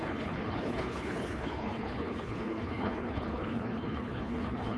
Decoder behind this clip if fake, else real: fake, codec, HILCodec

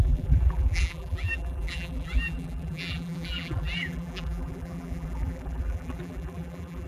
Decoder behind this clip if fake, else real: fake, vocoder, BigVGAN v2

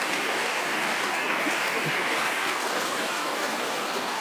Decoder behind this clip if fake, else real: fake, codec, DAC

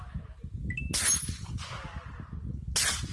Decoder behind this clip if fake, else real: real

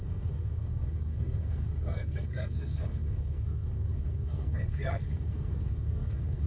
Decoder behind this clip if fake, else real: fake, codec, SNAC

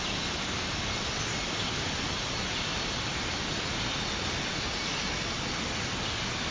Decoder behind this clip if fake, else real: real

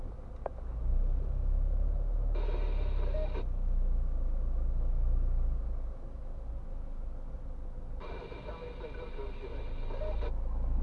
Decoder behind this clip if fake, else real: real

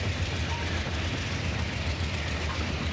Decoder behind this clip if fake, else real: fake, vocoder, BigVGAN v2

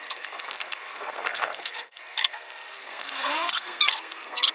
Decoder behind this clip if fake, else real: fake, codec, SNAC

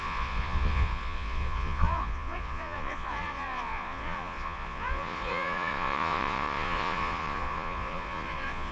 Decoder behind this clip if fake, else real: fake, vocoder, Vocos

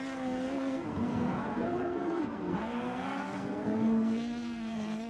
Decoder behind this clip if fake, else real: fake, codec, SNAC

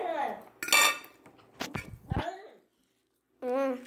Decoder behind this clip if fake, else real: real